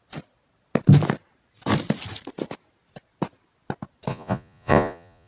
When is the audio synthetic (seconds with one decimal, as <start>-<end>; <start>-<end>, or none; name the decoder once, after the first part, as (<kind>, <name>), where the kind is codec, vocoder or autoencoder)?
4.1-5.3 (vocoder, Vocos)